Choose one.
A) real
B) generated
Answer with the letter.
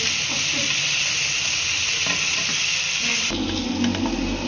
A